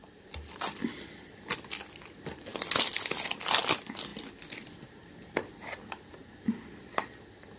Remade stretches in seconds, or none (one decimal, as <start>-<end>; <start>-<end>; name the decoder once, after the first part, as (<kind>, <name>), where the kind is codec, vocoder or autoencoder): none